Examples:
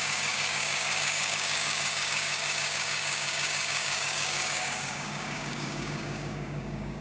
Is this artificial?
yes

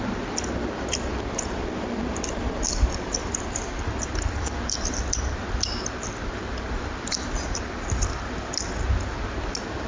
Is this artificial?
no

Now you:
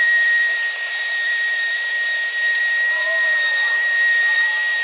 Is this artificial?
yes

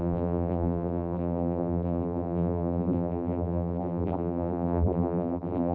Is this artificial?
yes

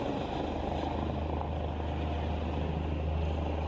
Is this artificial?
no